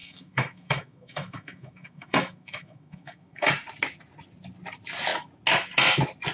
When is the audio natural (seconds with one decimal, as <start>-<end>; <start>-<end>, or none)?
3.5-6.3

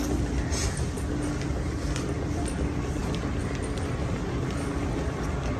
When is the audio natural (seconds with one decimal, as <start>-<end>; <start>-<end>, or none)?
0.0-5.6

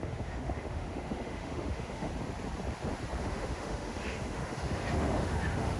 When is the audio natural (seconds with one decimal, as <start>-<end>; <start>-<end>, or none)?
2.1-3.2